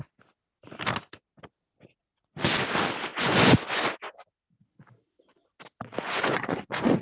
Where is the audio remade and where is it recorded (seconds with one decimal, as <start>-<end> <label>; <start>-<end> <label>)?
0.0-3.1 recorded; 3.1-3.8 remade; 3.8-5.9 recorded; 5.9-7.0 remade